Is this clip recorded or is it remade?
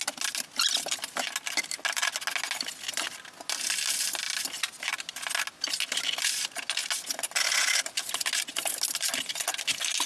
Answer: recorded